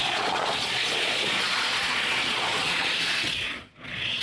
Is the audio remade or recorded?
remade